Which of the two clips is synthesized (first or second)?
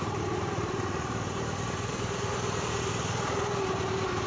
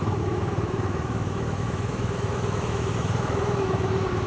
second